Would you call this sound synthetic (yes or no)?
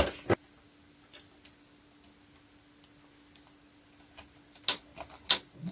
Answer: no